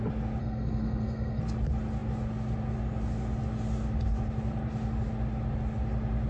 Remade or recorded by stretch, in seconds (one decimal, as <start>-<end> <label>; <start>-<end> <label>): 0.0-0.4 recorded; 0.4-1.4 remade; 1.4-6.3 recorded